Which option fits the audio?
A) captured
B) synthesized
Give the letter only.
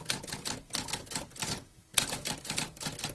A